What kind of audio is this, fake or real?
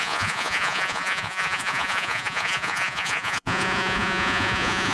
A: fake